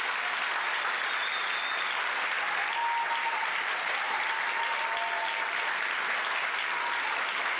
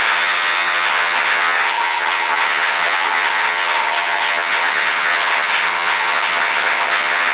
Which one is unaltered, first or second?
first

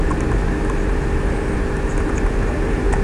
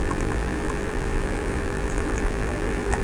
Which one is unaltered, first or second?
first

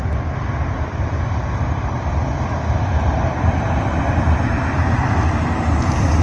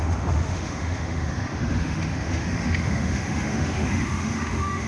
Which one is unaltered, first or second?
first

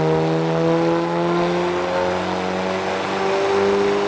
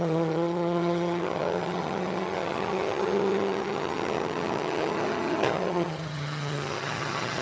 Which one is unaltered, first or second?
first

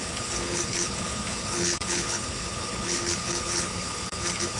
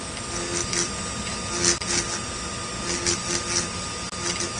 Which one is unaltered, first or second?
second